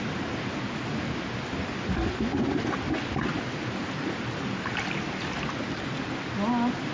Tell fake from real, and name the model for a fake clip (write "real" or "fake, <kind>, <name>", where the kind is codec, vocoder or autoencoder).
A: real